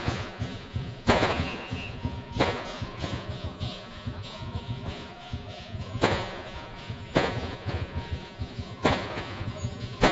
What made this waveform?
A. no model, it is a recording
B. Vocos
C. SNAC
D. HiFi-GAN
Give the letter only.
B